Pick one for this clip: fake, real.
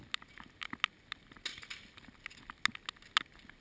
real